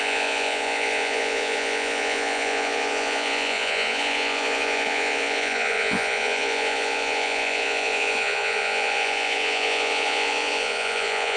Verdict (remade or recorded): remade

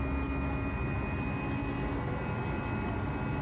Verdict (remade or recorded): recorded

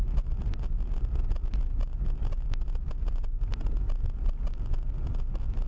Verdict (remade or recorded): recorded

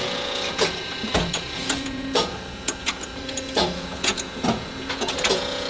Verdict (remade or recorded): remade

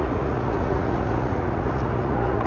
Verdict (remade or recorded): remade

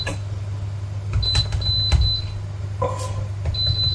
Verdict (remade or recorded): recorded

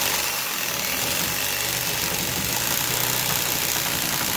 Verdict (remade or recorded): recorded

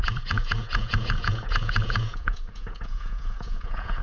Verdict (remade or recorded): remade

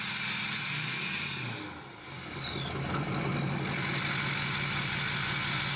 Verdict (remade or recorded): recorded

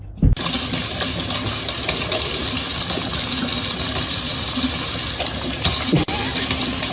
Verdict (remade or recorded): recorded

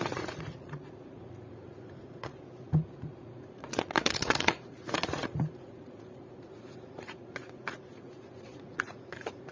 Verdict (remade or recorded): remade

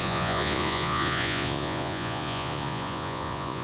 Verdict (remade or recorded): remade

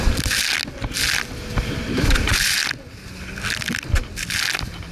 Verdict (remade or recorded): recorded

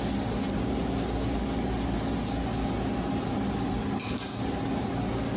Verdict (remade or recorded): recorded